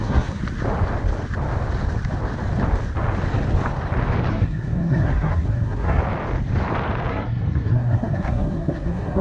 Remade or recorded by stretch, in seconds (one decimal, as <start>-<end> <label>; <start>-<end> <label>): 0.0-0.4 remade; 0.4-4.3 recorded; 4.3-6.0 remade; 6.0-7.1 recorded; 7.1-9.2 remade